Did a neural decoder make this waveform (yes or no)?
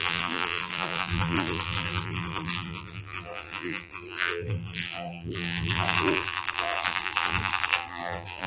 yes